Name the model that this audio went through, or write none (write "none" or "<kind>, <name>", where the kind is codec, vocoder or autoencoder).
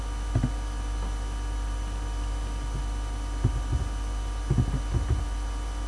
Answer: none